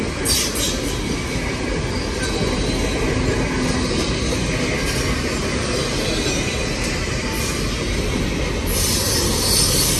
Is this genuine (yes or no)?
yes